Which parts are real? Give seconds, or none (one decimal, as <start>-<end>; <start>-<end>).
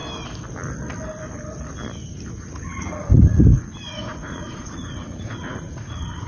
0.0-2.3